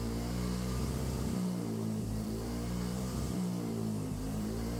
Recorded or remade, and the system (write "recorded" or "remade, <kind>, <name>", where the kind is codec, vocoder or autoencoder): remade, vocoder, BigVGAN v2